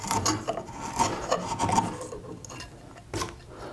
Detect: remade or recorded recorded